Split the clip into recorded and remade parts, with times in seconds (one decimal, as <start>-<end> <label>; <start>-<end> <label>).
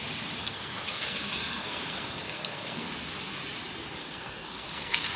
0.0-0.4 recorded; 0.4-2.9 remade; 2.9-4.0 recorded; 4.0-5.2 remade